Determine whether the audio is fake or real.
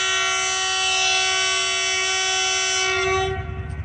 real